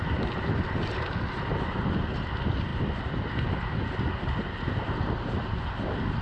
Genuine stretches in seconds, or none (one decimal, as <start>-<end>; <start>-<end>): 0.0-6.2